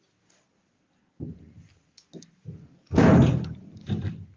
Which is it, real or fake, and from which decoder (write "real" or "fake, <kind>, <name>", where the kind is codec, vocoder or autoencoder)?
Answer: real